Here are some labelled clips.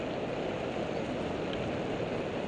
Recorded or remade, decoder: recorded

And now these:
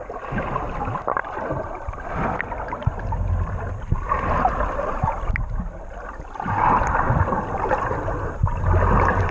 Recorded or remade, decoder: recorded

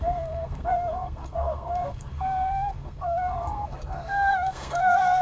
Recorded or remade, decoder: remade, codec, SNAC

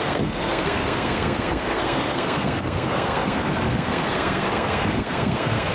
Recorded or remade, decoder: remade, codec, SNAC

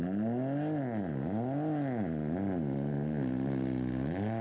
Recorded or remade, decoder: recorded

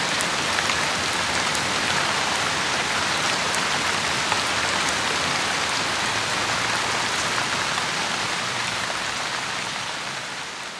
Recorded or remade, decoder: remade, vocoder, BigVGAN v2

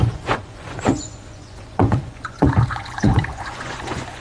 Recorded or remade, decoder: remade, vocoder, Vocos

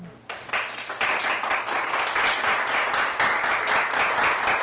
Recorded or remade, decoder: recorded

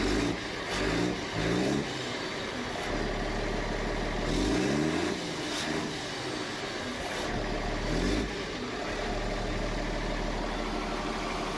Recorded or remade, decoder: recorded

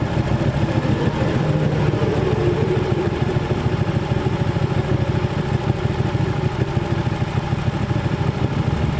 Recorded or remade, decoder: remade, vocoder, BigVGAN v2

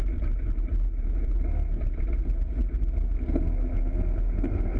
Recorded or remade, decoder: recorded